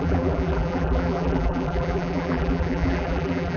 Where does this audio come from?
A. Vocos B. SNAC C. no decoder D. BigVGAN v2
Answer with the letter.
D